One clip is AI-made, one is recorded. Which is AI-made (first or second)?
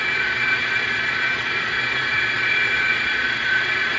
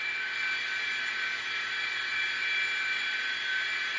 first